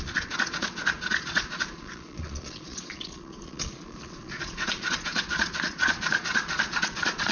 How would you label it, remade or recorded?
remade